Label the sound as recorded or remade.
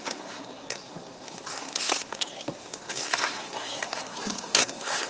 remade